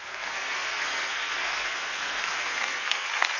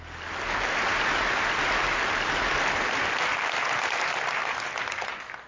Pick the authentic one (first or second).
second